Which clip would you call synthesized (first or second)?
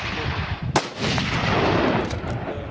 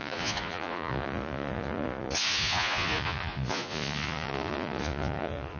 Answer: second